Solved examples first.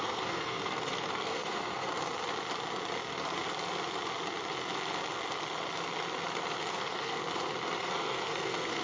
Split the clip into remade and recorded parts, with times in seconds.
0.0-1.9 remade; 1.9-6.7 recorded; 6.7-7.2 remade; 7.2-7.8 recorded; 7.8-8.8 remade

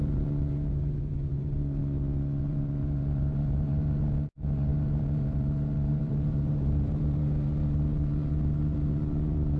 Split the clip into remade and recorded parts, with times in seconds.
0.0-1.8 remade; 1.8-2.4 recorded; 2.4-9.6 remade

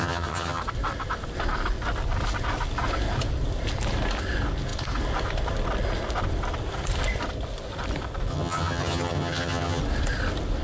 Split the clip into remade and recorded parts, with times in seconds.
0.0-0.6 remade; 0.6-8.3 recorded; 8.3-9.8 remade; 9.8-10.6 recorded

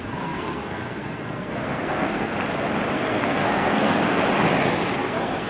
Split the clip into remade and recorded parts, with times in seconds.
0.0-2.3 remade; 2.3-2.9 recorded; 2.9-4.2 remade; 4.2-4.9 recorded; 4.9-5.5 remade

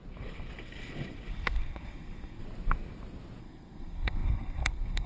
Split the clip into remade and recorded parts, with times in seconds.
0.0-1.3 recorded; 1.3-2.4 remade; 2.4-3.4 recorded; 3.4-5.1 remade